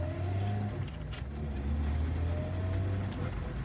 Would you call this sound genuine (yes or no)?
yes